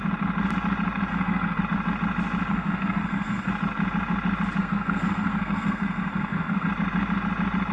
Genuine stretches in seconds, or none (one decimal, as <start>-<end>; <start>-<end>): 0.0-1.1; 1.6-2.5; 3.5-4.6; 6.7-7.7